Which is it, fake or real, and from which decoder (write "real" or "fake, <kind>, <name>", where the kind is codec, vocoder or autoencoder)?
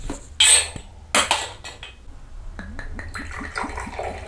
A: real